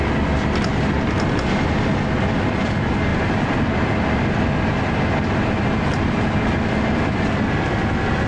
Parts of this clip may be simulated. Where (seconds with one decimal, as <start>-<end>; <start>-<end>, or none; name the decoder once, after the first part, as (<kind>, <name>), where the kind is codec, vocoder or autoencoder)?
none